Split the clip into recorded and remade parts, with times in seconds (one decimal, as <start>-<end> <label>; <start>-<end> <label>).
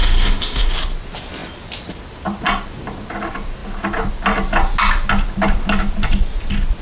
0.0-0.7 remade; 0.7-6.8 recorded